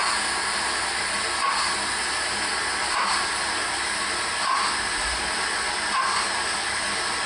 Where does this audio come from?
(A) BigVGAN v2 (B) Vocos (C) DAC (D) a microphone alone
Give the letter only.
D